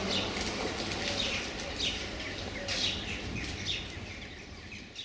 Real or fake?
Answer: real